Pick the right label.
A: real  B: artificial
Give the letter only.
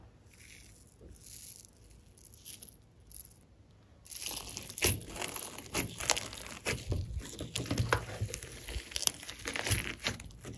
A